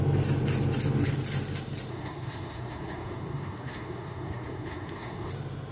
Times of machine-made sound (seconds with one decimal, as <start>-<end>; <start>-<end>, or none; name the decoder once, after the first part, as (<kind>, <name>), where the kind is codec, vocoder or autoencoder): 1.9-5.3 (codec, SNAC)